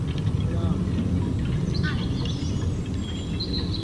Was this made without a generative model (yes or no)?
yes